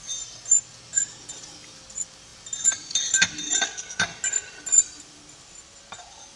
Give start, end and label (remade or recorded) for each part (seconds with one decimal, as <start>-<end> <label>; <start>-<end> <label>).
0.0-6.4 recorded